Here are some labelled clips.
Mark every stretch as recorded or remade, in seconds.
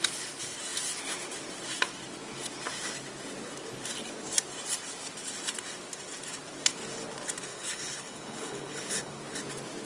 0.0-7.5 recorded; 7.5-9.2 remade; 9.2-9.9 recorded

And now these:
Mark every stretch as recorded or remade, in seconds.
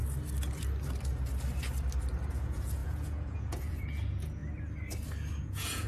0.0-2.3 recorded; 2.3-4.4 remade; 4.4-5.4 recorded; 5.4-5.9 remade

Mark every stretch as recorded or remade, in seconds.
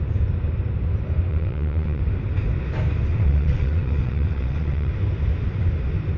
0.0-1.3 recorded; 1.3-2.0 remade; 2.0-3.1 recorded; 3.1-4.9 remade; 4.9-6.2 recorded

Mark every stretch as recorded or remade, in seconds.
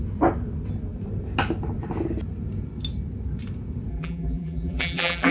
0.0-3.9 recorded; 3.9-5.3 remade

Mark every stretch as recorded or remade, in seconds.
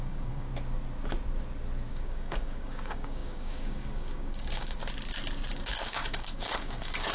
0.0-0.5 remade; 0.5-1.9 recorded; 1.9-4.8 remade; 4.8-5.5 recorded; 5.5-7.1 remade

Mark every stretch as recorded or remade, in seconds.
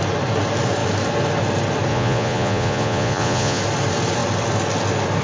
0.0-1.9 recorded; 1.9-3.6 remade; 3.6-5.2 recorded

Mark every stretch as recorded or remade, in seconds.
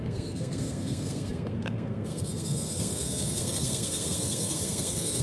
0.0-5.2 remade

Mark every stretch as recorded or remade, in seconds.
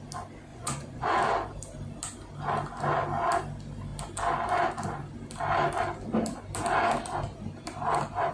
0.0-0.5 recorded; 0.5-1.2 remade; 1.2-8.3 recorded